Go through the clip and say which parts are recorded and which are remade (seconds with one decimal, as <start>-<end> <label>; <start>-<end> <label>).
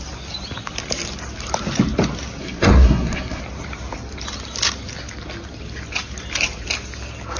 0.0-2.4 recorded; 2.4-3.4 remade; 3.4-7.4 recorded